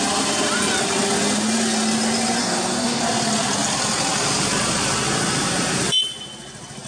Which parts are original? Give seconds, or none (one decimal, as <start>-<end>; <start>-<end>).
0.0-2.4; 3.0-6.9